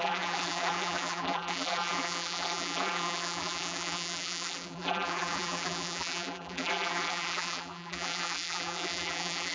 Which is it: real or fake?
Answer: fake